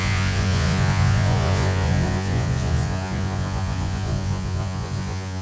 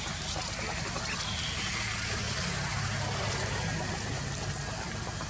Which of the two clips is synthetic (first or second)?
first